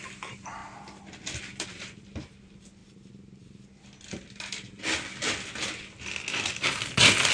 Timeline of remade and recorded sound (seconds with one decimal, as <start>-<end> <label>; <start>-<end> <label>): 0.0-7.3 recorded